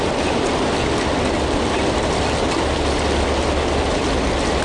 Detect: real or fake real